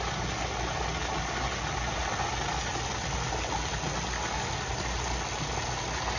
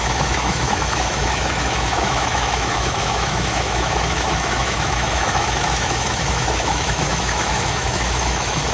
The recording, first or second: first